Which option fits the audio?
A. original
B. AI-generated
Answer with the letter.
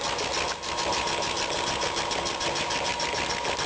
A